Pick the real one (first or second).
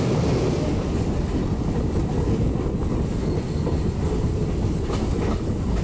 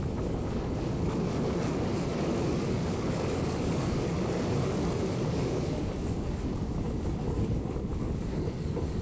first